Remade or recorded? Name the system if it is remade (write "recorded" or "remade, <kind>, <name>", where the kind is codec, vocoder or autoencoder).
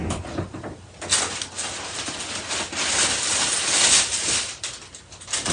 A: recorded